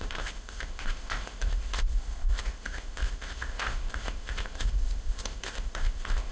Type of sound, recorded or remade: remade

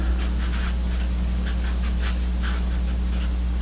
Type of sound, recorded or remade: recorded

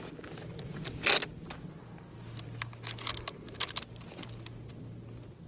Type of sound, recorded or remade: recorded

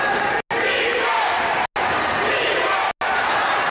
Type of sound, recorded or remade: recorded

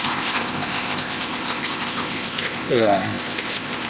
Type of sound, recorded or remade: remade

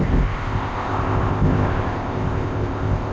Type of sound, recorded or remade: remade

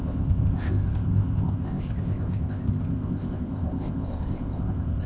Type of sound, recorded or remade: remade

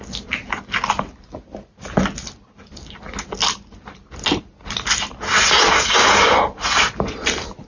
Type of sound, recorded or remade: recorded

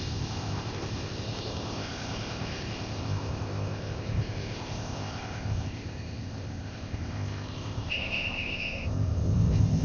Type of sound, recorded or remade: remade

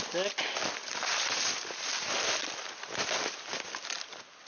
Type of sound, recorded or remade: recorded